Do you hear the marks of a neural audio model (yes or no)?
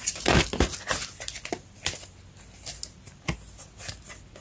no